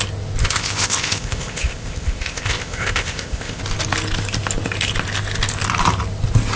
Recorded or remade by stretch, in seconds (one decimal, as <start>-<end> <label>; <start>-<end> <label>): 0.0-0.4 recorded; 0.4-3.6 remade; 3.6-6.6 recorded